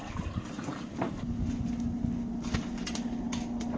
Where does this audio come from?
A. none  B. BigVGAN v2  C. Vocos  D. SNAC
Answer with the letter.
A